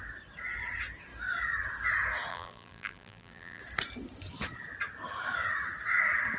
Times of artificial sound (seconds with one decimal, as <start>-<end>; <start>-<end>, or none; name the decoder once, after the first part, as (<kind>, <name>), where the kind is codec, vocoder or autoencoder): 2.3-3.6 (vocoder, BigVGAN v2)

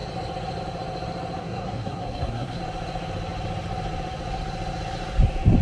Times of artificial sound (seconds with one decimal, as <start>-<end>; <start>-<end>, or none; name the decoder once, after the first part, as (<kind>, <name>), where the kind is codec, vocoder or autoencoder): 1.4-2.6 (codec, SNAC)

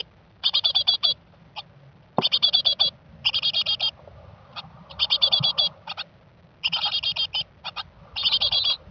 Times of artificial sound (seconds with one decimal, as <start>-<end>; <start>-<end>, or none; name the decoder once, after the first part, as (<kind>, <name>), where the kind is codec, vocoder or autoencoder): 0.0-1.5 (vocoder, BigVGAN v2)